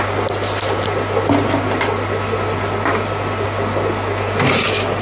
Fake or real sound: real